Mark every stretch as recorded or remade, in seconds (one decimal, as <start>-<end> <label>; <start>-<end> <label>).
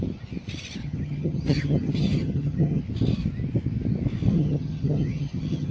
0.0-0.8 recorded; 0.8-2.8 remade; 2.8-4.3 recorded; 4.3-5.7 remade